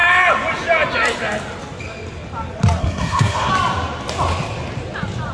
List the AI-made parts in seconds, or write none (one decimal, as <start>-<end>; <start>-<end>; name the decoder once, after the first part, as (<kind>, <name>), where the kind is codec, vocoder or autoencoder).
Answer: 2.8-3.5 (codec, SNAC)